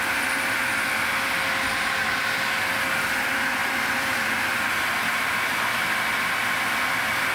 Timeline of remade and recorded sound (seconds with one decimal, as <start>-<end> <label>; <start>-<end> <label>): 0.0-3.6 recorded; 3.6-4.2 remade; 4.2-7.3 recorded